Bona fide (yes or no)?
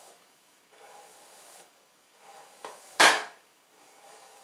no